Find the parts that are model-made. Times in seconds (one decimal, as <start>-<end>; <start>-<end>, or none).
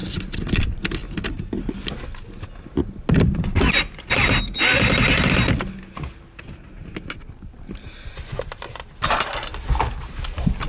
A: 0.0-0.6